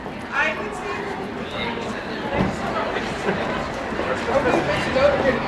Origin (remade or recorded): recorded